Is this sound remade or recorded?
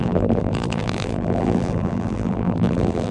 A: remade